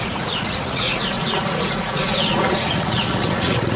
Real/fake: fake